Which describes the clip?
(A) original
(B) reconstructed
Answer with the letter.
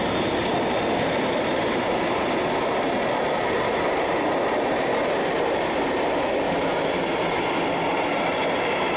A